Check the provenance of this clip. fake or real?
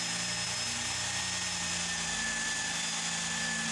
real